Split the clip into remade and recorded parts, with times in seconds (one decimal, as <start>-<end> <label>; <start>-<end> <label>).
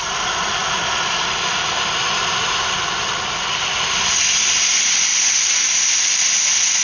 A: 0.0-0.6 recorded; 0.6-1.5 remade; 1.5-5.1 recorded; 5.1-6.8 remade